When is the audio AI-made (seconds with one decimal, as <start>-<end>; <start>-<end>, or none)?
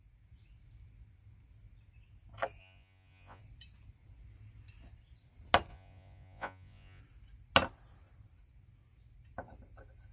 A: 2.6-3.4; 5.7-7.0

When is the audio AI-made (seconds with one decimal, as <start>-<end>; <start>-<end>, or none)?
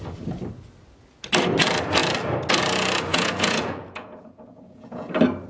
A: 3.1-5.1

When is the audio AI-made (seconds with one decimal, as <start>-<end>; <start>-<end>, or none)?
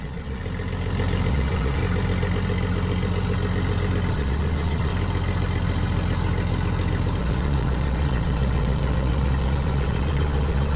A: 0.0-0.4; 1.3-1.8; 4.1-4.9; 7.2-10.8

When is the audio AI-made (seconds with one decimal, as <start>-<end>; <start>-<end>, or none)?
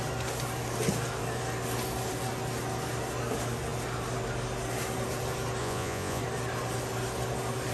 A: 5.6-6.2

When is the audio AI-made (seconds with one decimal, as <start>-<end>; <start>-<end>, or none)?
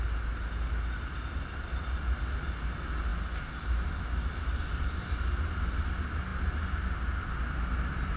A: none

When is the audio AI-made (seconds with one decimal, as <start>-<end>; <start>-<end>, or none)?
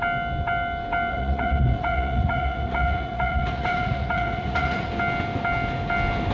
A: 1.1-4.9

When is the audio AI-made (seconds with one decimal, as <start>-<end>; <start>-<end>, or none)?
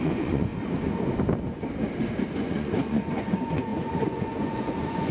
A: 0.0-0.5; 2.3-5.1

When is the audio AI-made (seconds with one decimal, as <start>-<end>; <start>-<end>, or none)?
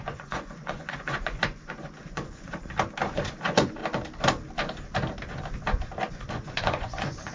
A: 0.0-2.5; 3.1-3.8; 6.1-7.3